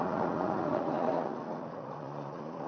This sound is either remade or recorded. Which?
remade